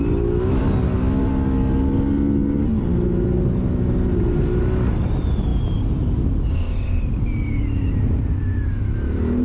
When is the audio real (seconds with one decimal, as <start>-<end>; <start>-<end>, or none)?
0.0-6.5; 7.0-9.4